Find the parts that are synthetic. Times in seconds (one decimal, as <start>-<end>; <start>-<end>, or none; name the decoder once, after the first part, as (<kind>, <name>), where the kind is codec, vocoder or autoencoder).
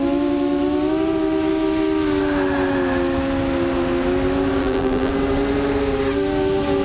4.6-5.1 (vocoder, BigVGAN v2)